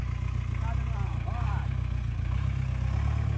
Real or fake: real